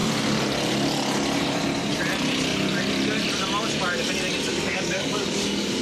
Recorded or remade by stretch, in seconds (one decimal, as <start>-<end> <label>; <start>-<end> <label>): 0.0-4.5 recorded; 4.5-5.8 remade